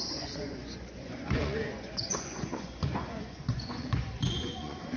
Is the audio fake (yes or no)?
yes